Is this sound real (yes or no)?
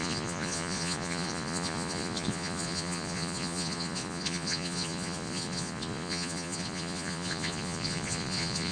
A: no